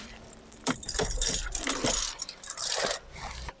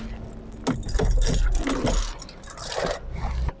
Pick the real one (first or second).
second